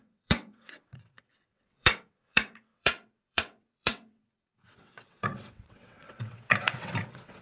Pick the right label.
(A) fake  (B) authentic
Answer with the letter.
A